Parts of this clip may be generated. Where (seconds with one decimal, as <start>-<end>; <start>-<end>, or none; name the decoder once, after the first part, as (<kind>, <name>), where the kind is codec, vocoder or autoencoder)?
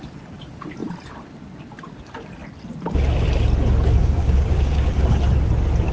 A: 4.0-4.9 (codec, DAC)